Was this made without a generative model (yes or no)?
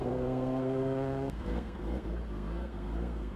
no